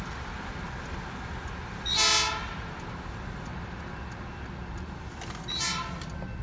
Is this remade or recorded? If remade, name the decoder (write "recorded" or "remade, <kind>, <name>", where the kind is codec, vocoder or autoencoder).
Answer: recorded